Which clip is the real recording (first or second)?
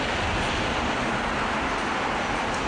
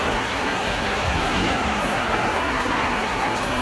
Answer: first